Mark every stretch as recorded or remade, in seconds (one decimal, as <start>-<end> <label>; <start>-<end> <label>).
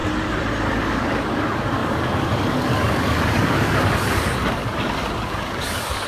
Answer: 0.0-0.9 recorded; 0.9-6.1 remade